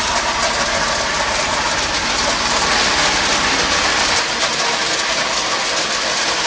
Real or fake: real